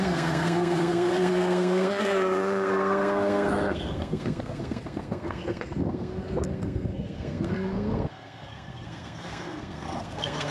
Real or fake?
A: fake